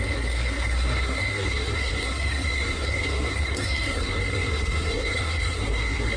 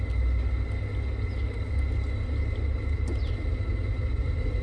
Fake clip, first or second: first